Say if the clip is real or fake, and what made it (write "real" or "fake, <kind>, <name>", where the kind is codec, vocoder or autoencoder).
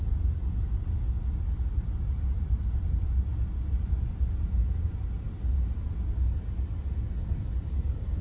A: real